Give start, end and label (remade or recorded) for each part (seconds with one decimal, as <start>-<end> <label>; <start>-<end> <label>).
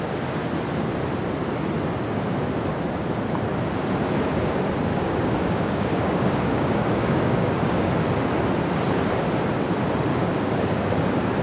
0.0-4.9 recorded; 4.9-7.9 remade; 7.9-10.1 recorded; 10.1-10.9 remade; 10.9-11.4 recorded